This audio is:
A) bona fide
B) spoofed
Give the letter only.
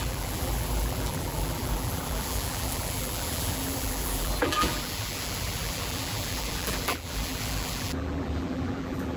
B